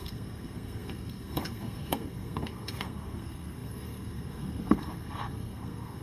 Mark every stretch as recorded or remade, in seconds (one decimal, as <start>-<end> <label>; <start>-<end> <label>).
0.0-6.0 remade